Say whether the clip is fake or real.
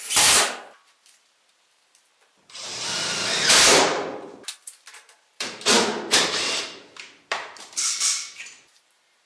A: fake